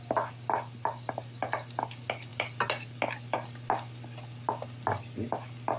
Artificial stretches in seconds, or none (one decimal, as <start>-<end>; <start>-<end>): none

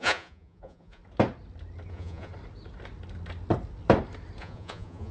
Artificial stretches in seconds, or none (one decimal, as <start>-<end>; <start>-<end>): 0.0-1.0; 1.9-2.3; 4.4-5.1

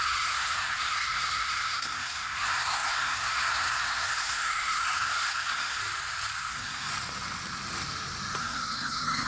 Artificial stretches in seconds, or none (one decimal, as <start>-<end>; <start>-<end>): 0.0-5.8; 6.5-6.9; 8.4-9.3

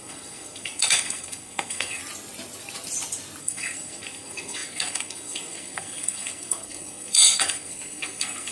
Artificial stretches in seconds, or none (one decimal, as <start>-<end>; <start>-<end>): 0.0-2.0; 3.4-8.5

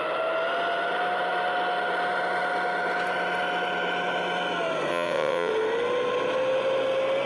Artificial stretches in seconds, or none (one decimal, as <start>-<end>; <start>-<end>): 4.9-5.5

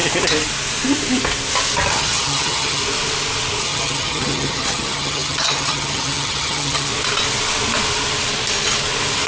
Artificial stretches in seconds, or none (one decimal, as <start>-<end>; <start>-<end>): 1.9-2.8; 3.6-6.9